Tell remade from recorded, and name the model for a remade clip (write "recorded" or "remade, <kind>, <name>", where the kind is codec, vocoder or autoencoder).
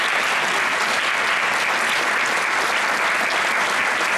recorded